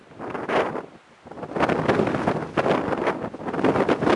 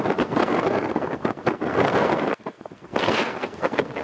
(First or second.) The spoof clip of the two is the second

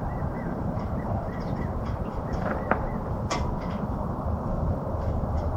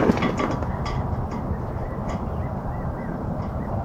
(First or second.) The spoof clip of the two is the first